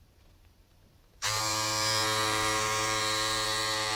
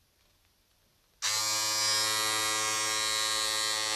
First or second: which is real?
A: second